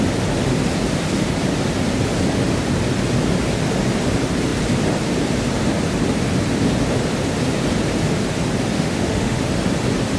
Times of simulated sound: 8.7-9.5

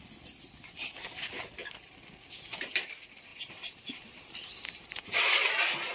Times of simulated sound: 3.3-5.5

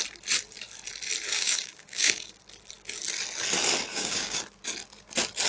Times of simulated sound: 1.3-2.4; 3.9-4.4